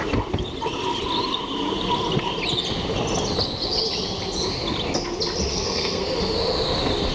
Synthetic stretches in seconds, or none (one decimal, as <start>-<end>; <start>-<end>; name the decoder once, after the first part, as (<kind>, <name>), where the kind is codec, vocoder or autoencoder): 5.5-6.0 (codec, SNAC)